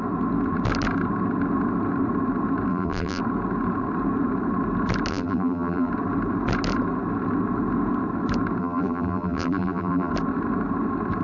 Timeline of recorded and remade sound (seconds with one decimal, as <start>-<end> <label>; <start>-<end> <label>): 0.0-2.7 recorded; 2.7-3.2 remade; 3.2-5.1 recorded; 5.1-5.9 remade; 5.9-8.6 recorded; 8.6-10.1 remade; 10.1-11.2 recorded